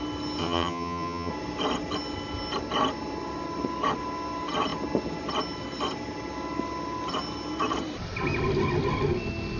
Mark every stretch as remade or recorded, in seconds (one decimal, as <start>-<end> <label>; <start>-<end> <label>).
0.0-0.4 recorded; 0.4-1.3 remade; 1.3-9.6 recorded